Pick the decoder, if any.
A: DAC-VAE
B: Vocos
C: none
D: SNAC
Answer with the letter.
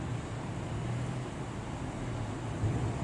C